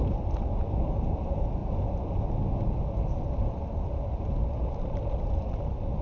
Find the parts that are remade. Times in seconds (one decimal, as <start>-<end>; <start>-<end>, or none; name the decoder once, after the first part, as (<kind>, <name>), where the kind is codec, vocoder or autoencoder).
none